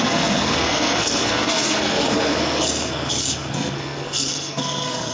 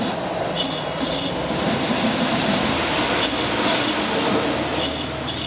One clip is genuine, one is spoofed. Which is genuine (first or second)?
second